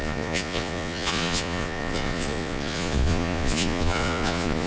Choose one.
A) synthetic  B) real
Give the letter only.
A